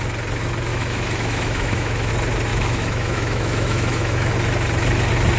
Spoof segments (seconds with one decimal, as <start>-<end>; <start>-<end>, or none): 0.7-2.1; 2.5-4.3